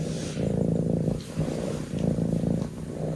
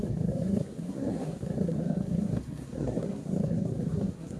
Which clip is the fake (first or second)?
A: second